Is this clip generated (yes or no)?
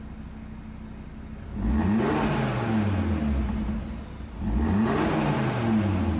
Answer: no